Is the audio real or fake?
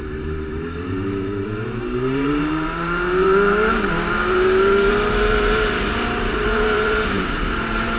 fake